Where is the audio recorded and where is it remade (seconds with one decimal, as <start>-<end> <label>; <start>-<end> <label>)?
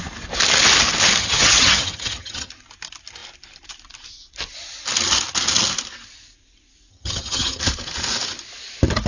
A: 0.0-1.2 recorded; 1.2-2.5 remade; 2.5-6.9 recorded; 6.9-7.6 remade; 7.6-9.1 recorded